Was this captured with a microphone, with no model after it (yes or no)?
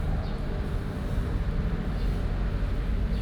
yes